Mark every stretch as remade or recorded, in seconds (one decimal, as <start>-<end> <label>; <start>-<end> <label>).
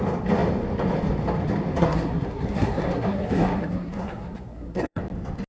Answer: 0.0-1.8 recorded; 1.8-5.0 remade; 5.0-5.5 recorded